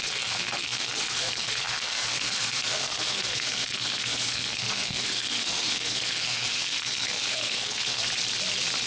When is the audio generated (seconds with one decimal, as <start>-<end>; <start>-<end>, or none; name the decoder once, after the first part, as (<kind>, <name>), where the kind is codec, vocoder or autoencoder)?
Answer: 0.0-8.0 (codec, SNAC)